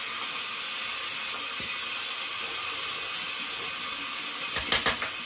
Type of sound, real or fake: real